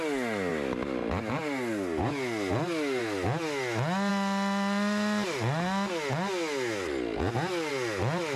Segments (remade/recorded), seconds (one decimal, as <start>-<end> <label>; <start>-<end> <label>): 0.0-8.4 recorded